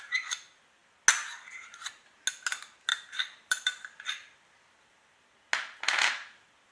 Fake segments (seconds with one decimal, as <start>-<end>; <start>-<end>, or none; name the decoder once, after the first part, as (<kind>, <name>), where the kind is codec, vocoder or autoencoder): 2.9-4.1 (vocoder, BigVGAN v2)